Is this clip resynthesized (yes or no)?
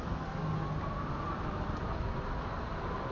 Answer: no